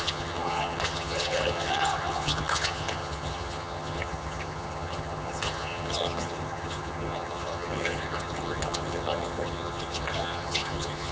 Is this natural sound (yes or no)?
no